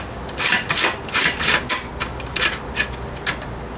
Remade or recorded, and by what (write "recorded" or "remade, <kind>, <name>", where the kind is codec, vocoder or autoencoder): recorded